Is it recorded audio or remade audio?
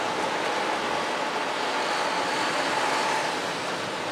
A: recorded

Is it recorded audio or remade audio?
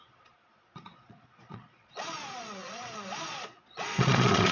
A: remade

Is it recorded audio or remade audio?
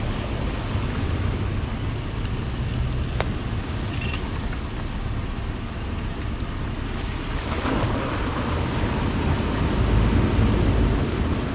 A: recorded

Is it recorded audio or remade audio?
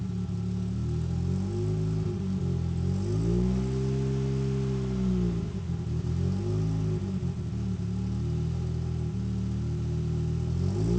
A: recorded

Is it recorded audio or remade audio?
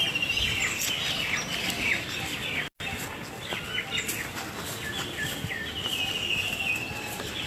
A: recorded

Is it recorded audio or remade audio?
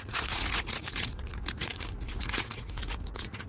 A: remade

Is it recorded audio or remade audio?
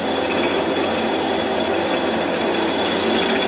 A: recorded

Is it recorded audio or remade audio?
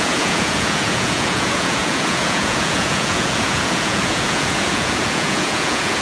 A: remade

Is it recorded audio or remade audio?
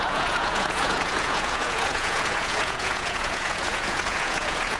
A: remade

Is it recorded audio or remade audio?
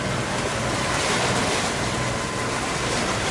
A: recorded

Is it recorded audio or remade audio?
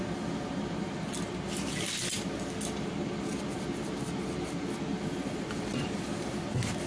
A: recorded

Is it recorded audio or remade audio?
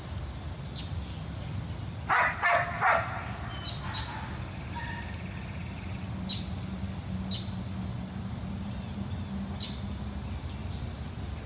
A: recorded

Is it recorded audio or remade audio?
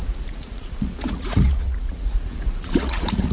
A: remade